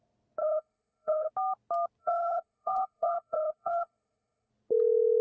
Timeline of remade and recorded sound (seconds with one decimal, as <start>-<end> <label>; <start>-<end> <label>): 0.0-0.4 recorded; 0.4-1.3 remade; 1.3-2.0 recorded; 2.0-4.5 remade; 4.5-5.2 recorded